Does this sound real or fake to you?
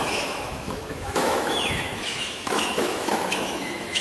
fake